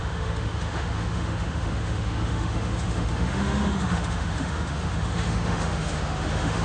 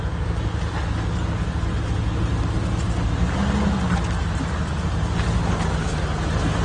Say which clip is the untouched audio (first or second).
second